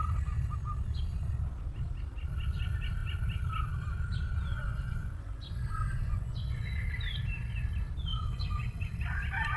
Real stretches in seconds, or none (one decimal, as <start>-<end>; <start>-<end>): 0.0-4.5; 6.7-8.1; 8.9-9.6